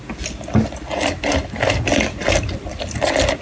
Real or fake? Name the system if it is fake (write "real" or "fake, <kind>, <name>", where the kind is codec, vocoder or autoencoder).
real